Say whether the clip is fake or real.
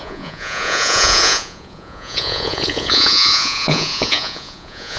fake